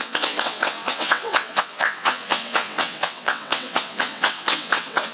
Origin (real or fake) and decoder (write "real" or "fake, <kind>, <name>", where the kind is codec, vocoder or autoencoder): fake, vocoder, WaveNeXt